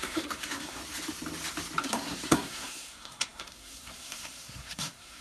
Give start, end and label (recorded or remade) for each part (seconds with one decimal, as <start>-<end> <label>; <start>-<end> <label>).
0.0-0.8 remade; 0.8-1.8 recorded; 1.8-5.2 remade